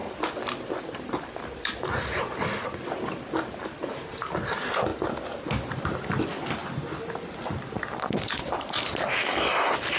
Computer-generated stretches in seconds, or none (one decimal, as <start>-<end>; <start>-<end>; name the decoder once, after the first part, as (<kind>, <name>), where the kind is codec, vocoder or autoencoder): 0.0-3.0 (vocoder, BigVGAN v2)